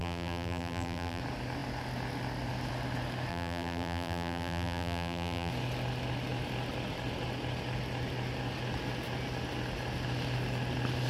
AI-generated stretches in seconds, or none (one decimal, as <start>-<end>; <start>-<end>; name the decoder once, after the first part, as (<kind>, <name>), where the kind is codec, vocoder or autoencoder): 0.0-1.2 (vocoder, BigVGAN v2); 3.3-5.5